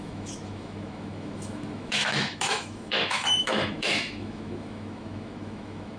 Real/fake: fake